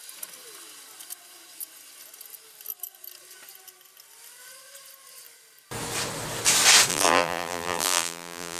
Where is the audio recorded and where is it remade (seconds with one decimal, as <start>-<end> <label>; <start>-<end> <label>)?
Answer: 0.0-6.9 recorded; 6.9-8.6 remade